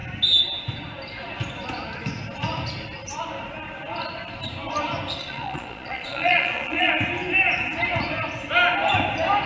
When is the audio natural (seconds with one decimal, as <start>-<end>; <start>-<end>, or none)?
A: 0.0-5.2; 6.9-9.5

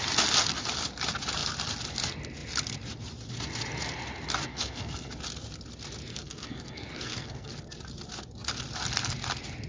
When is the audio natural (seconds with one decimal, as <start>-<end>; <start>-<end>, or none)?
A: 0.0-4.5; 5.1-6.1; 7.5-9.7

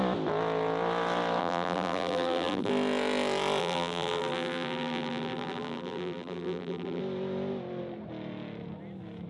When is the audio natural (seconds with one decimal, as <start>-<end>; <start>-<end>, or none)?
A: 0.0-1.4; 2.7-3.6; 7.0-9.3

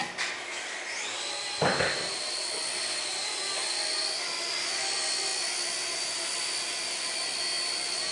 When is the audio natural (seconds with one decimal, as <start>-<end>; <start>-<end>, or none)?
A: 0.0-8.1

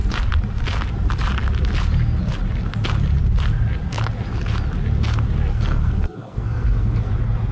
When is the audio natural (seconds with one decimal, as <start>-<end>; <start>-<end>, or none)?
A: 0.0-5.5; 7.1-7.5

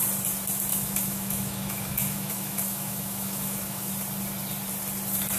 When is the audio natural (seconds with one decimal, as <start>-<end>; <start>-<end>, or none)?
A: 0.0-0.7; 3.9-5.4